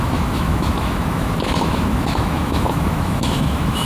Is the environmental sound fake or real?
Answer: fake